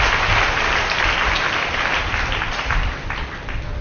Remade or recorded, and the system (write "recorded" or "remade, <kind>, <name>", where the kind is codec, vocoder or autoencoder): recorded